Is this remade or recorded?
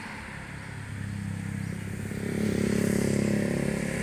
recorded